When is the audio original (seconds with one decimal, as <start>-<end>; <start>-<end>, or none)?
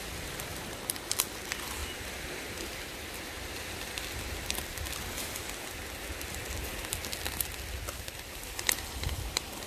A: 0.0-9.7